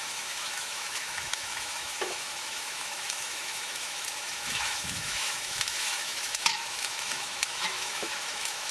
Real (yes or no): no